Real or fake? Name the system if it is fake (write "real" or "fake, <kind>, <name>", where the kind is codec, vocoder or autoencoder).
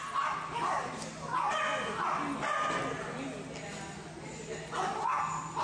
real